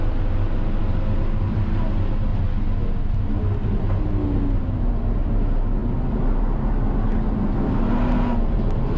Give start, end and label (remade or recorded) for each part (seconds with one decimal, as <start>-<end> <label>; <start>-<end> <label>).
0.0-9.0 recorded